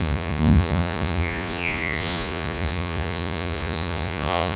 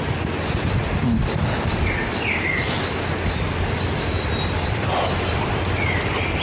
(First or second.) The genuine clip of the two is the second